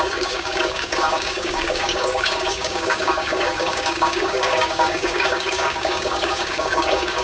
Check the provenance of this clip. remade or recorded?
remade